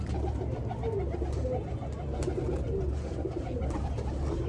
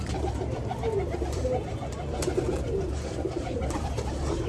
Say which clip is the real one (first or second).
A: first